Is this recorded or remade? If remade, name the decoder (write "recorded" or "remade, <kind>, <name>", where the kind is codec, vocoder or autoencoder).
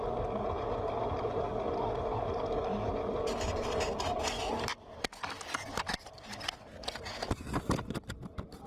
recorded